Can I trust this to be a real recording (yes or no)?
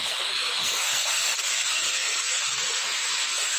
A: no